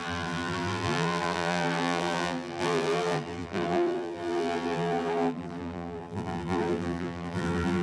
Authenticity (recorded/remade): remade